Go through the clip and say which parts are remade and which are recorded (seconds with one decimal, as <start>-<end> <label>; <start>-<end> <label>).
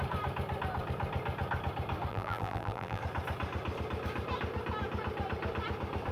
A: 0.0-2.1 recorded; 2.1-3.0 remade; 3.0-6.1 recorded